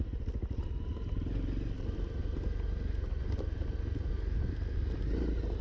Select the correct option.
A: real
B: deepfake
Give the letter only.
A